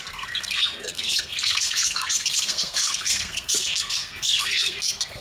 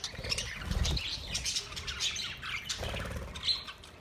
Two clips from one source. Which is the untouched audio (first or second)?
second